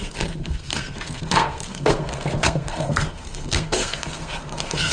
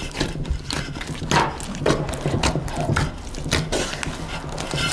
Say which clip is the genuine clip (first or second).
second